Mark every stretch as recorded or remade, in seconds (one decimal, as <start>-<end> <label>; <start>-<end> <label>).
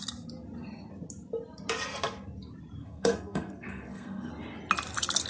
0.0-2.8 recorded; 2.8-4.3 remade; 4.3-5.3 recorded